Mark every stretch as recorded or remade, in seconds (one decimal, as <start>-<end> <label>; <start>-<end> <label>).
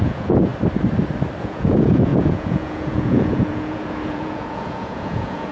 0.0-0.5 remade; 0.5-1.4 recorded; 1.4-5.5 remade